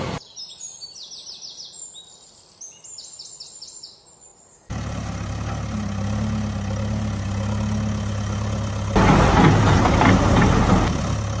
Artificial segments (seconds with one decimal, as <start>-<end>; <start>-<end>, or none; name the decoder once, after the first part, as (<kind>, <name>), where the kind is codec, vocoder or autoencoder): none